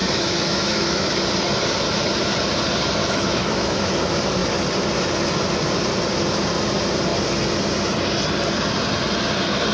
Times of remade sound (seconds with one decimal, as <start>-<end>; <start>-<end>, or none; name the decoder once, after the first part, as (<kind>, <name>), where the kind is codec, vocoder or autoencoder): 0.0-1.1 (autoencoder, DAC-VAE); 3.0-3.9